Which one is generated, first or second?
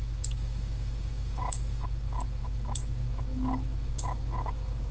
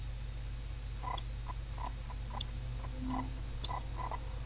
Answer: first